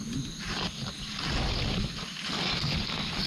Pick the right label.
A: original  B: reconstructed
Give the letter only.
A